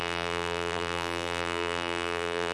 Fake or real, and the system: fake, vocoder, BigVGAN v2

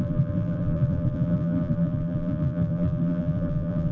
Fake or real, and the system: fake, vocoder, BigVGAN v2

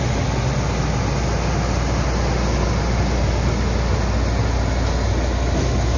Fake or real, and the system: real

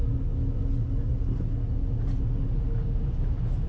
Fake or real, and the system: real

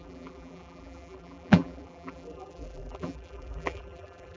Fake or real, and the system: fake, vocoder, BigVGAN v2